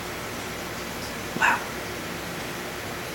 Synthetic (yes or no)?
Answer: no